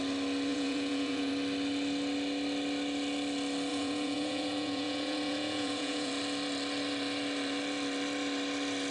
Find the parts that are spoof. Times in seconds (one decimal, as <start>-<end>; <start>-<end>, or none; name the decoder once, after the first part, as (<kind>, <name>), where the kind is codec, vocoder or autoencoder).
0.5-1.3 (vocoder, Vocos); 3.7-6.1